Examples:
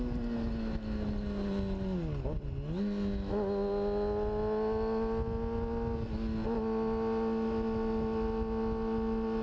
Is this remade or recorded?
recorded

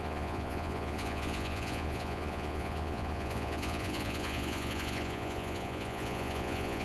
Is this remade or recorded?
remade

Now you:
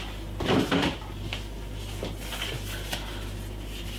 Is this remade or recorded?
recorded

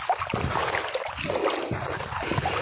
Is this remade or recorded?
recorded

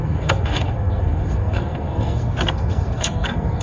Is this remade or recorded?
remade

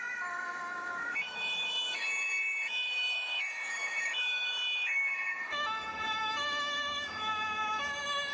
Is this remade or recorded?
remade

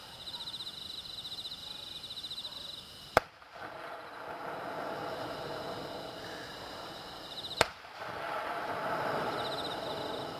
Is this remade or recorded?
recorded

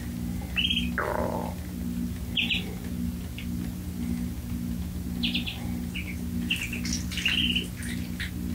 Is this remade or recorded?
recorded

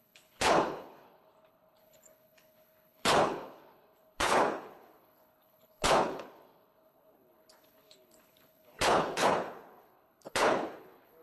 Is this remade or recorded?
remade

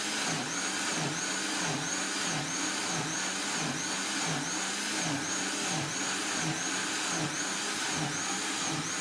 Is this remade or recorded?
recorded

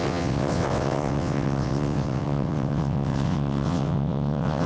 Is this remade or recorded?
remade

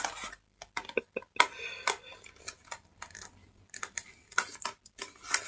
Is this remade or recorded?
recorded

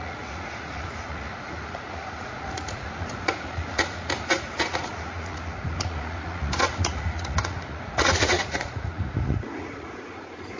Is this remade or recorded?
remade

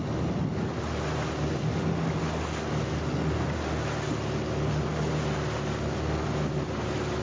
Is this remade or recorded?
recorded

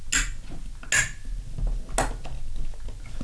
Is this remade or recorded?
recorded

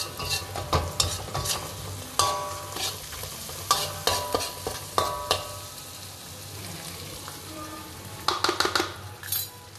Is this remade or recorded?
recorded